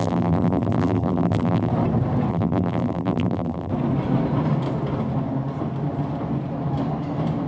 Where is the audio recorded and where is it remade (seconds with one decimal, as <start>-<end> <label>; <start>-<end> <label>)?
0.0-1.7 remade; 1.7-2.3 recorded; 2.3-3.7 remade; 3.7-7.5 recorded